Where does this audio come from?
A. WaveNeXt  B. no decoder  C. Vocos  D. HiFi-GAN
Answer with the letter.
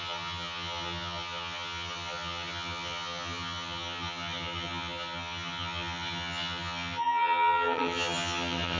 D